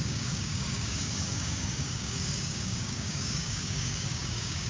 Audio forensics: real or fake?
fake